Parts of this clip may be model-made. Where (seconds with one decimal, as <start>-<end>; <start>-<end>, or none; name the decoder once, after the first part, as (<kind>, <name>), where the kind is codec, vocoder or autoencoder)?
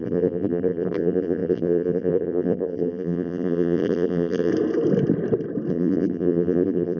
0.0-4.5 (vocoder, BigVGAN v2); 5.7-7.0